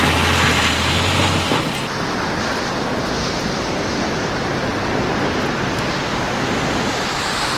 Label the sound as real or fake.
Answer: real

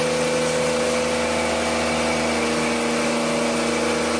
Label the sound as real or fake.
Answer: real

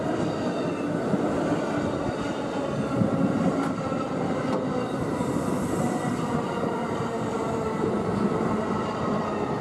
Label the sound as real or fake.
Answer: real